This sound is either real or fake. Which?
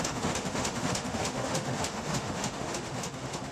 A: fake